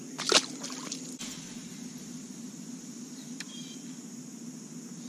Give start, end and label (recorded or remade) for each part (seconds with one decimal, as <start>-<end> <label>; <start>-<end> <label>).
0.0-0.8 recorded; 0.8-3.9 remade; 3.9-5.1 recorded